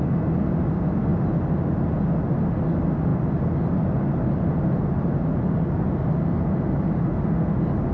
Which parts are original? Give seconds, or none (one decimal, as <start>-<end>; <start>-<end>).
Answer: 0.0-7.9